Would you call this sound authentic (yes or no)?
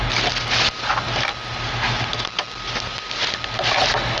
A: yes